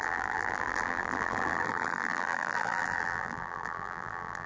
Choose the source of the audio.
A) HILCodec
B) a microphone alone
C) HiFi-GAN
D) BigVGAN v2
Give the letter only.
D